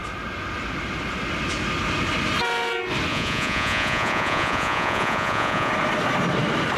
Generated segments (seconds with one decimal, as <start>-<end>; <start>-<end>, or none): 3.1-5.7